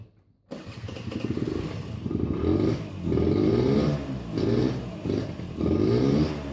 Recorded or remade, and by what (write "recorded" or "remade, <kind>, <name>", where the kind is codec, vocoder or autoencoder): recorded